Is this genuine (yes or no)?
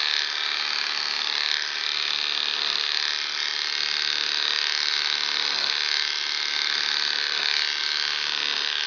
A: yes